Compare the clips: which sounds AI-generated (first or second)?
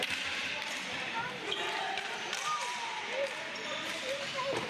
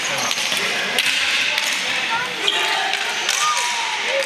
first